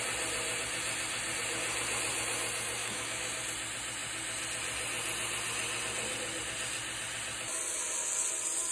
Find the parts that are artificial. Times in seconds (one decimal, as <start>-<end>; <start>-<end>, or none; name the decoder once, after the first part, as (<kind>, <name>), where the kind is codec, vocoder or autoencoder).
2.8-3.4 (autoencoder, DAC-VAE)